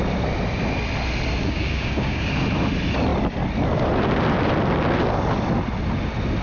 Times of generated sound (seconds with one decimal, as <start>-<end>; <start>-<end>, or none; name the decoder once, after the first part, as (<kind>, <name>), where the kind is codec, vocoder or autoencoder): 1.4-2.3 (codec, DAC)